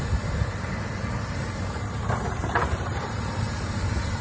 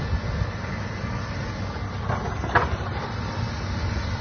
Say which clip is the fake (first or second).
first